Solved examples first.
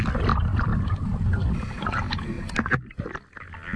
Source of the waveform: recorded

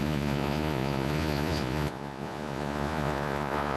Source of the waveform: remade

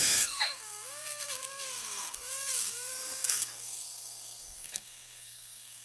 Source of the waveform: remade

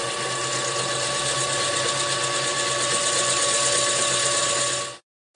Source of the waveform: recorded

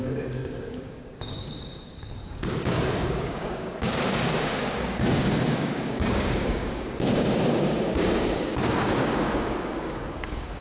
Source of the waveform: remade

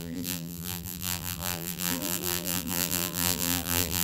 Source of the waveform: remade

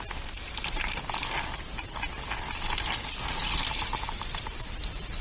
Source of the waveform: recorded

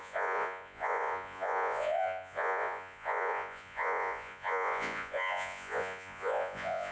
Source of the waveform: remade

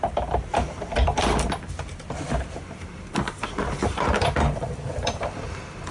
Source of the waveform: remade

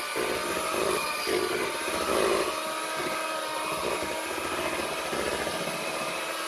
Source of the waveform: recorded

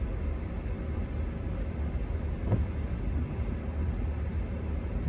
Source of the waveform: recorded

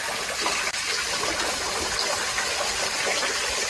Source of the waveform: recorded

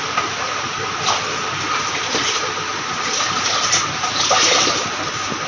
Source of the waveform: recorded